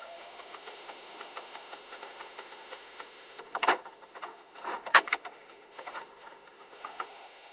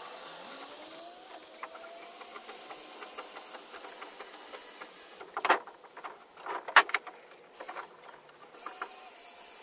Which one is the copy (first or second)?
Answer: first